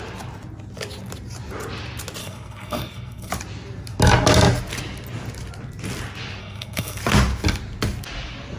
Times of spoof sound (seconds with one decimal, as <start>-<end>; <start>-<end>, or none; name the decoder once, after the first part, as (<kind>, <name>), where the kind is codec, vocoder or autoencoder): 2.2-3.3 (codec, SNAC); 6.4-7.0